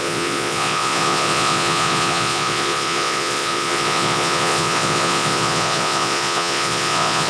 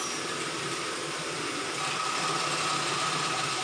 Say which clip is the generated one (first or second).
first